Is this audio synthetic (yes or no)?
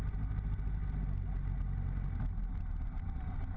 no